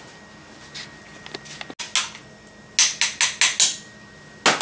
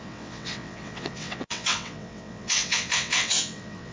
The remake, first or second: second